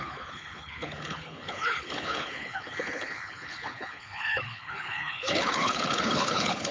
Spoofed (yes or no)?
yes